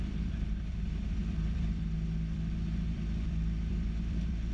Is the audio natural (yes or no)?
no